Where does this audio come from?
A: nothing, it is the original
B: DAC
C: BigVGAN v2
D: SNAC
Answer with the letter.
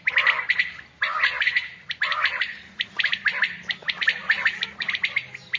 A